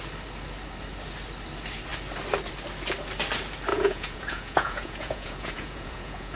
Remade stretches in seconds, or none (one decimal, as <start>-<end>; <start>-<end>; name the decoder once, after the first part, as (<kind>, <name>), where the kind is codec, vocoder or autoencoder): 3.7-6.4 (vocoder, Vocos)